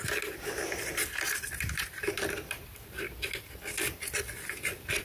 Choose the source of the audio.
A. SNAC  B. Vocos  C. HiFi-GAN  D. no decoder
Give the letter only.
D